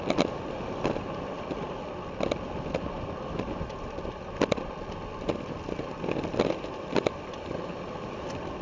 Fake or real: real